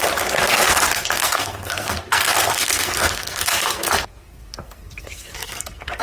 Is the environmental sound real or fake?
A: fake